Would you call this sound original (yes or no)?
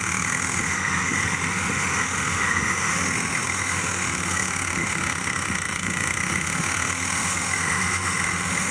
no